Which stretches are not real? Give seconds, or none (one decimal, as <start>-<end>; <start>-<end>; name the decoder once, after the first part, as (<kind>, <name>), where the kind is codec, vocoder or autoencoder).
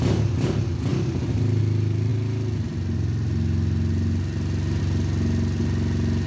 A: none